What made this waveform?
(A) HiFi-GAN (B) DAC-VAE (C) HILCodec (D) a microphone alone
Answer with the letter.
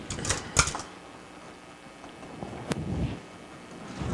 D